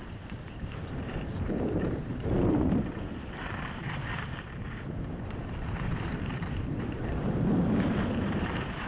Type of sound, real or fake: fake